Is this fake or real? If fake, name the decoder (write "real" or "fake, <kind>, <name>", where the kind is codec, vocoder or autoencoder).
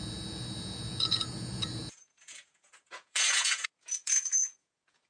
fake, vocoder, Vocos